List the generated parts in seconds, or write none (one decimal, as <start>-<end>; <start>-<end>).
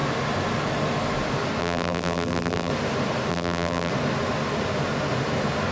1.6-2.7; 3.3-3.9